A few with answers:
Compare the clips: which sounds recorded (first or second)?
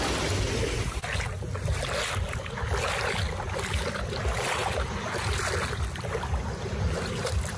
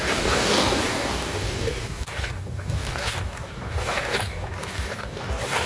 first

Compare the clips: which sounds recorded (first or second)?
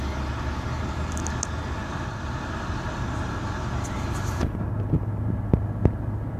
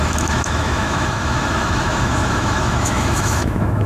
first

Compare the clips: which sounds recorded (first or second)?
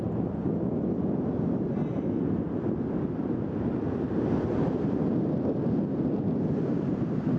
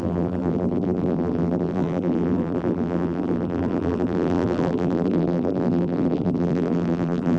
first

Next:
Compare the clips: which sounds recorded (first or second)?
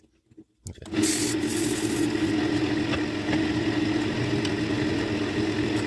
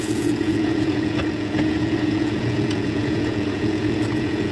first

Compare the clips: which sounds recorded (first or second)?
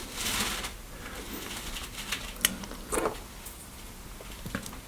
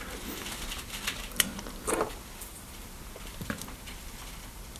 first